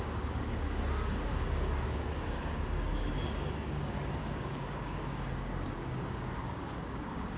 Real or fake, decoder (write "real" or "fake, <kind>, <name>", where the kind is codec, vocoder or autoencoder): fake, codec, DAC